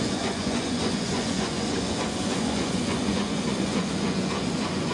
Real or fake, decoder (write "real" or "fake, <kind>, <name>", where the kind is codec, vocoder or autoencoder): fake, vocoder, Vocos